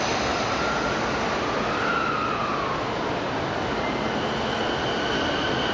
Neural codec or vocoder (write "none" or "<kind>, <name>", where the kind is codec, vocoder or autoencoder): none